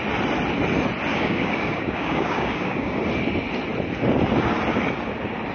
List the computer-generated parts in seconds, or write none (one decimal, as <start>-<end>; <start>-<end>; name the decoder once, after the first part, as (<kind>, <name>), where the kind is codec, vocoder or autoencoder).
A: 1.1-3.0 (codec, DAC)